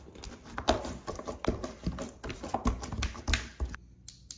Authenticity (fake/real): real